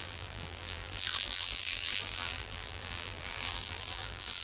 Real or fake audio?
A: fake